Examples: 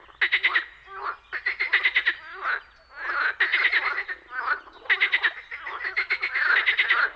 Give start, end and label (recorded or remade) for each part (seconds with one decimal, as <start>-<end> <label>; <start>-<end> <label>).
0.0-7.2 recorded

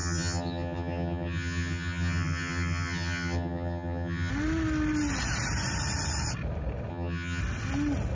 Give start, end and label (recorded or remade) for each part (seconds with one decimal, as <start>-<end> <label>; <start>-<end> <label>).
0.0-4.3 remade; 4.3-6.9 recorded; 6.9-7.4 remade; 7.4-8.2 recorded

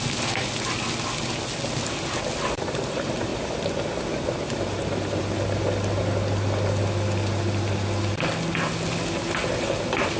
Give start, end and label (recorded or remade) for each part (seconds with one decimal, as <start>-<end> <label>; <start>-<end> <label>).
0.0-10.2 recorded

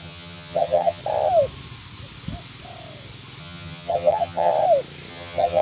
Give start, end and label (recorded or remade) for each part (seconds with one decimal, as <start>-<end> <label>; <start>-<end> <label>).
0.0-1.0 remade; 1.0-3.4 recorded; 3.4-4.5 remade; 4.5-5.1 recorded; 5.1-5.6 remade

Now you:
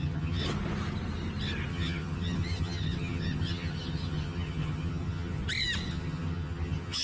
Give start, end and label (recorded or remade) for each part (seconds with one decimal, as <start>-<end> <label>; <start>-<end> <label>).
0.0-0.4 remade; 0.4-1.7 recorded; 1.7-5.4 remade; 5.4-5.9 recorded; 5.9-7.0 remade

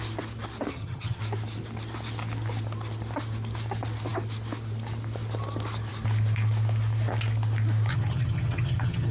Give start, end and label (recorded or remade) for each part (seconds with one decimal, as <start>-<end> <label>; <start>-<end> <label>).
0.0-0.7 recorded; 0.7-1.2 remade; 1.2-7.9 recorded; 7.9-9.1 remade

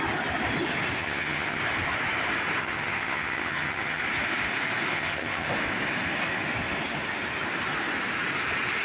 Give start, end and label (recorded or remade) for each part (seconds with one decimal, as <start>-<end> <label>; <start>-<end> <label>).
0.0-1.0 recorded; 1.0-1.6 remade; 1.6-2.6 recorded; 2.6-4.0 remade; 4.0-4.9 recorded; 4.9-5.5 remade; 5.5-8.8 recorded

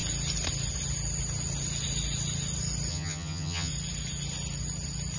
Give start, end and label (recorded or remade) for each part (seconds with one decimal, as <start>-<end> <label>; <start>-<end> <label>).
0.0-2.9 recorded; 2.9-3.7 remade; 3.7-5.2 recorded